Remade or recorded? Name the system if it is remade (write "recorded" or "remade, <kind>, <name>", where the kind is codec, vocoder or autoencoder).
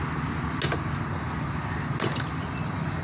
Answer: recorded